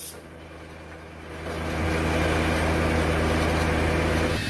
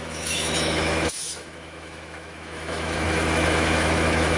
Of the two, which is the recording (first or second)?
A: first